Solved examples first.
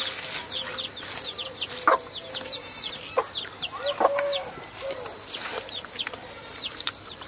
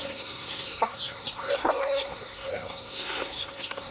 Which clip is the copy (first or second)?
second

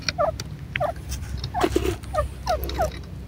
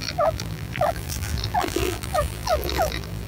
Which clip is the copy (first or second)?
second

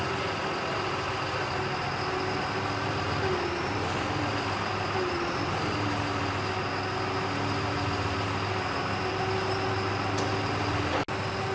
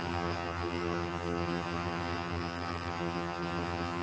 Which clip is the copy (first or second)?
second